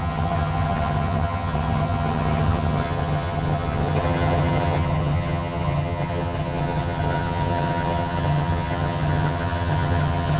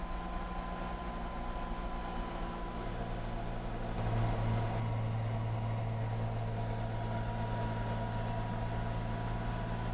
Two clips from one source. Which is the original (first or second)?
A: second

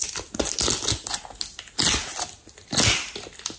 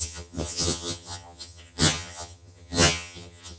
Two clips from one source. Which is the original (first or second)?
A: first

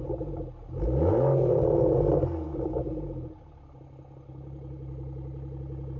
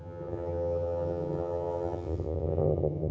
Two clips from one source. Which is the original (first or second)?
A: first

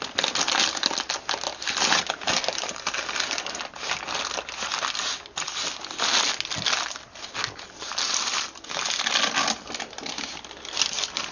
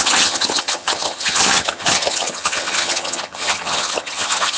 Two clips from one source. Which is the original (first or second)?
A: first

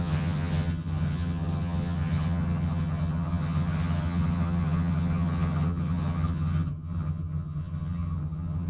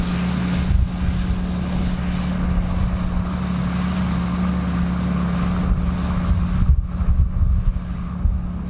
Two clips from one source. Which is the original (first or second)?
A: second